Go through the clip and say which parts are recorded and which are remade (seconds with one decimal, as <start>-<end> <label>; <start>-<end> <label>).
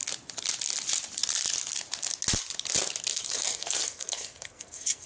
0.0-3.1 recorded; 3.1-5.1 remade